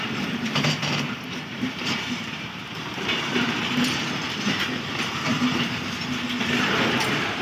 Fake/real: fake